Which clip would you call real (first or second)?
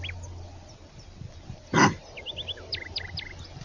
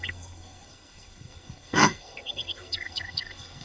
first